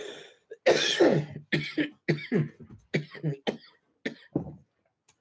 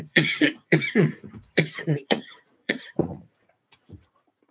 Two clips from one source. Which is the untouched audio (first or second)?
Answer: first